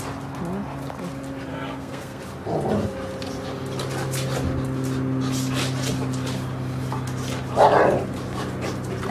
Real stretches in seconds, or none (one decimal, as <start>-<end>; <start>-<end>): 0.0-1.5; 2.2-9.1